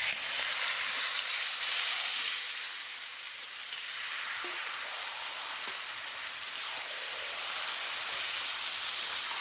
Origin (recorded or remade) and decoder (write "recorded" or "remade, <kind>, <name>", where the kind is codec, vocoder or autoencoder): recorded